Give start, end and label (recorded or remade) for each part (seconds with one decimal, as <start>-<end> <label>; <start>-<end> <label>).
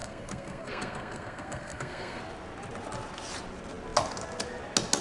0.0-2.2 remade; 2.2-5.0 recorded